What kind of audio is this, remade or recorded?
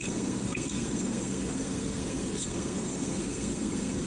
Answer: remade